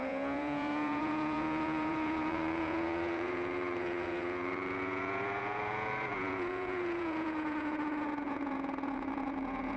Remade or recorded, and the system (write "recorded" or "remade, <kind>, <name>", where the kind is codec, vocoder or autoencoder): remade, vocoder, Vocos